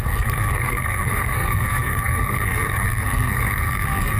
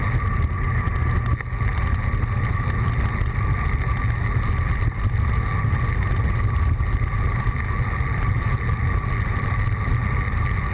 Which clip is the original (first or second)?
second